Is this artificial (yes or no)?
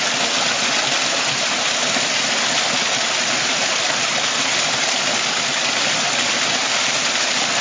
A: no